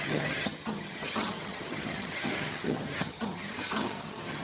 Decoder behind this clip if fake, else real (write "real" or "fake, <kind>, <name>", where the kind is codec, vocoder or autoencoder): fake, vocoder, HiFi-GAN